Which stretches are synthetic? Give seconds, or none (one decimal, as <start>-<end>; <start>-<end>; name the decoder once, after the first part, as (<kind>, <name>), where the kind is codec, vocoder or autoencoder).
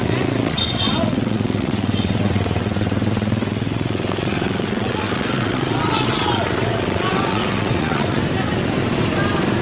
0.0-8.2 (vocoder, WaveNeXt)